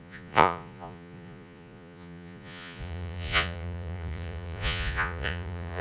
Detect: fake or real fake